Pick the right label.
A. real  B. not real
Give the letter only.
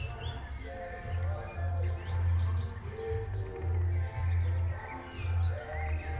A